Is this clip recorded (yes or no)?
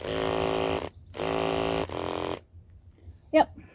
yes